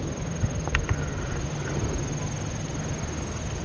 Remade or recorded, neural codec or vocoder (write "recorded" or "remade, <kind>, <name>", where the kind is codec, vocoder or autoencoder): recorded